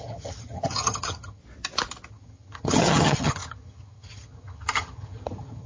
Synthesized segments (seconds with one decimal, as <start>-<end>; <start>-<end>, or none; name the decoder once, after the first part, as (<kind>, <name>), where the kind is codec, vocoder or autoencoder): 0.0-1.4 (vocoder, HiFi-GAN); 2.1-5.7